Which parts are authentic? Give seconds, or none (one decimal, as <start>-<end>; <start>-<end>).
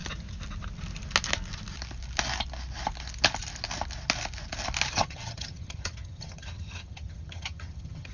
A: 0.0-4.9